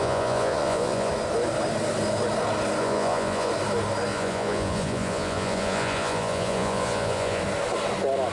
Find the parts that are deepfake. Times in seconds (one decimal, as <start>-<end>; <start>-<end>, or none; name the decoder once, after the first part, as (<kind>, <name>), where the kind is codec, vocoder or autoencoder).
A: 0.0-1.1 (vocoder, Vocos); 2.8-3.5; 4.1-7.4